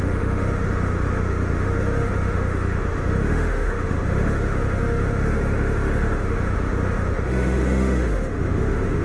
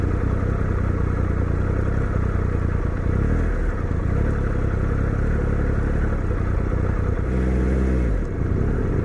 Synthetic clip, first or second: first